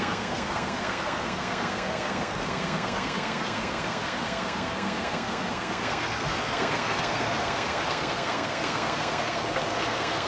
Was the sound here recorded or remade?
remade